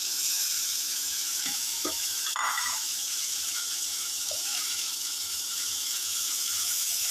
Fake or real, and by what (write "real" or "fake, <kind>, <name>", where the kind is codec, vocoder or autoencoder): fake, autoencoder, DAC-VAE